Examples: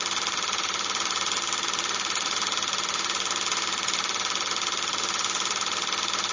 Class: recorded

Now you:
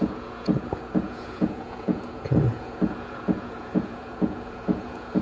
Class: remade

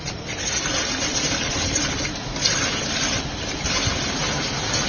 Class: recorded